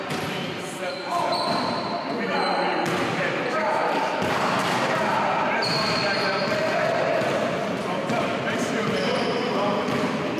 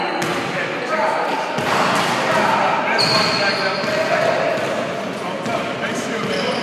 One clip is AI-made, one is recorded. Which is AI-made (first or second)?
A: first